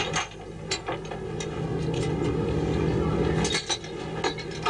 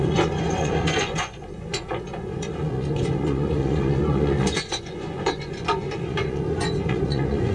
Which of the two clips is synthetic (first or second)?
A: second